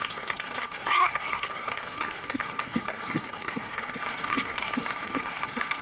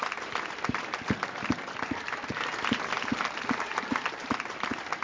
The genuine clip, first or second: second